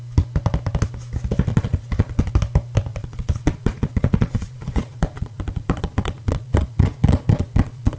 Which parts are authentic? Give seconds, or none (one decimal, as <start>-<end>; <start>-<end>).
0.0-1.5; 2.3-2.9